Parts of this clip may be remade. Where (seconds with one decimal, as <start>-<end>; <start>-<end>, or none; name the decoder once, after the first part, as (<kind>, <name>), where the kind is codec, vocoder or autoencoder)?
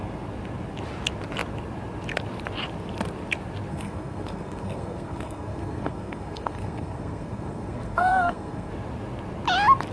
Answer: 3.7-8.7 (codec, SNAC)